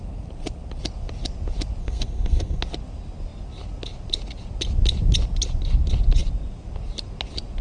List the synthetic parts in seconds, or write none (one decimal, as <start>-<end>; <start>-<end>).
1.8-2.6